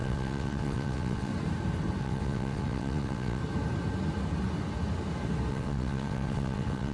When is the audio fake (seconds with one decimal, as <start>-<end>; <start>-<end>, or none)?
0.0-1.3; 2.0-3.4; 5.5-6.9